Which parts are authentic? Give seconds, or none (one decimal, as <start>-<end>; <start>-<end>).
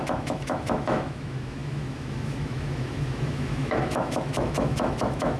none